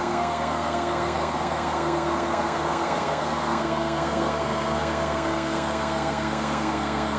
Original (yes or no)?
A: no